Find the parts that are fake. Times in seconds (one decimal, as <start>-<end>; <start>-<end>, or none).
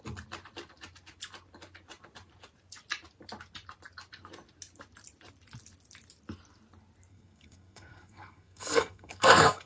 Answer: 7.1-9.7